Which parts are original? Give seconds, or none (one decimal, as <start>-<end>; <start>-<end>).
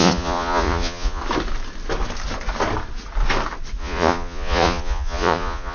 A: 1.2-3.8